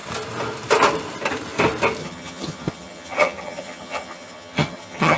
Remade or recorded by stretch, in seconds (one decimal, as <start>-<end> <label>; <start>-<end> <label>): 0.0-2.0 recorded; 2.0-5.2 remade